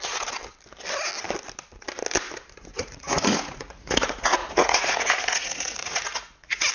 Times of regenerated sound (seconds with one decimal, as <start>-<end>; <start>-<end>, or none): 2.7-6.7